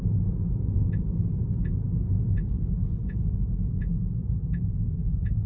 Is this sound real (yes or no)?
no